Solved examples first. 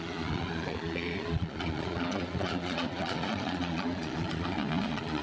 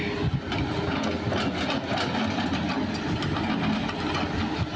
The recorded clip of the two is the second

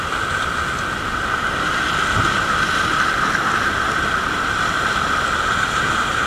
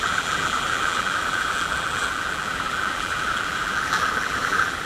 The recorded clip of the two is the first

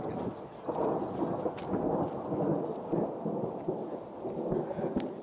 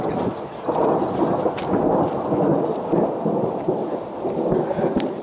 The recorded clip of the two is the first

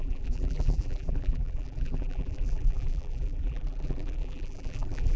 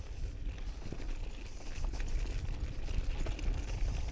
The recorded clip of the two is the second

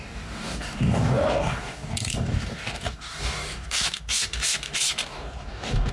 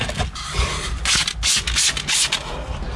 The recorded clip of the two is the second